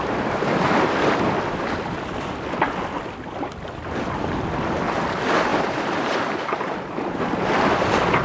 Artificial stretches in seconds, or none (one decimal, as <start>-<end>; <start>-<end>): 0.0-0.7; 5.5-7.5